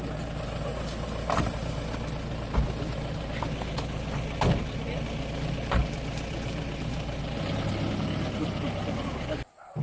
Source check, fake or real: real